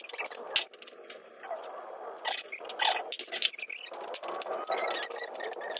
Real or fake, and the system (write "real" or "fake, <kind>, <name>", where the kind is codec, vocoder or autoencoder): real